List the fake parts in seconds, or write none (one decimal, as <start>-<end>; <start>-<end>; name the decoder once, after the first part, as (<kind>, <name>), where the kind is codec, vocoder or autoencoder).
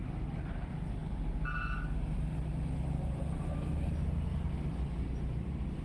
none